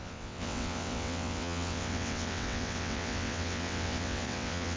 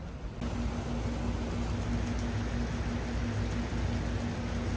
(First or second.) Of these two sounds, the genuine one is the second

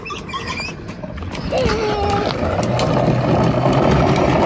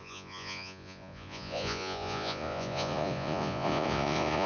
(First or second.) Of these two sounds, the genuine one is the first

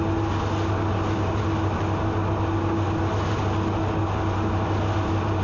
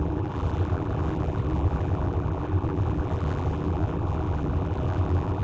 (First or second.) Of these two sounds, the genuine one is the first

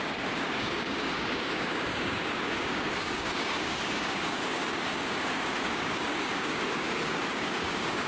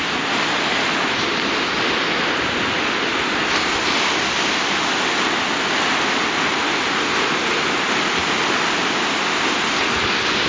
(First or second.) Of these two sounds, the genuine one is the second